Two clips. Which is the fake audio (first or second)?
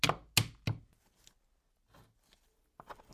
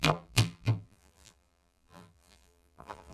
second